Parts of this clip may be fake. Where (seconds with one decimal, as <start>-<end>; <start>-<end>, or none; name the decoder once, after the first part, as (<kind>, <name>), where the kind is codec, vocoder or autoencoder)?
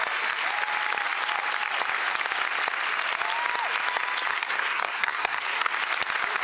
4.3-5.7 (codec, SNAC)